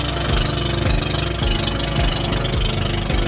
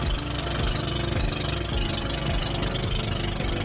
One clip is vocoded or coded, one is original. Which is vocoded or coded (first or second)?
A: second